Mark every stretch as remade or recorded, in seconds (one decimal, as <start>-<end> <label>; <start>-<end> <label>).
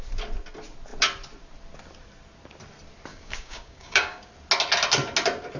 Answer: 0.0-3.1 recorded; 3.1-4.3 remade; 4.3-5.6 recorded